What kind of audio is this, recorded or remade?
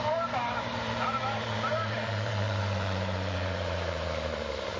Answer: remade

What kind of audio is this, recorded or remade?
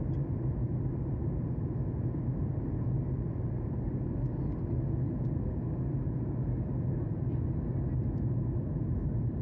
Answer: recorded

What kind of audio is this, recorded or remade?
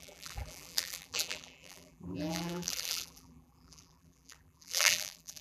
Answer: remade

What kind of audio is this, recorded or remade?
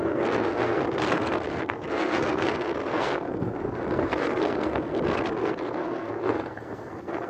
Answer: remade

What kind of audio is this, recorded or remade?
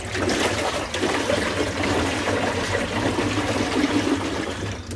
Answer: recorded